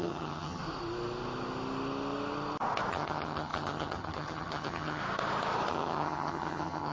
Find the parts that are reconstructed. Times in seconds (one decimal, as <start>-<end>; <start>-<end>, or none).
0.0-0.6; 2.9-5.0; 5.7-6.9